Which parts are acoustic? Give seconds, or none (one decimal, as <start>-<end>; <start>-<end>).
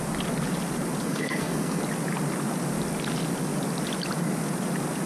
0.0-1.0; 1.8-5.1